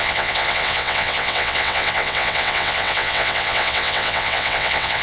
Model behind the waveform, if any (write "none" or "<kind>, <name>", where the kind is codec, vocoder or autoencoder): vocoder, WaveNeXt